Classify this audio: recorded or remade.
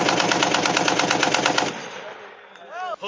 recorded